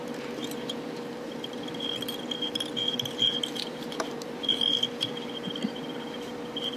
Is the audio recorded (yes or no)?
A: no